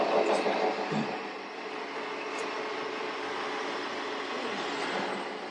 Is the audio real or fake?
real